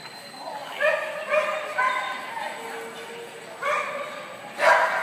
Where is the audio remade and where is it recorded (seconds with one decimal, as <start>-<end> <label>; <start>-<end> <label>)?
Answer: 0.0-5.0 recorded